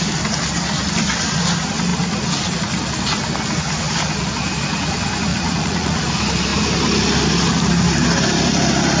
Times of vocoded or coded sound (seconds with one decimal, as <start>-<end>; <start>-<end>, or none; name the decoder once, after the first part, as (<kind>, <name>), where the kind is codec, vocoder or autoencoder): 5.3-6.0 (vocoder, Vocos)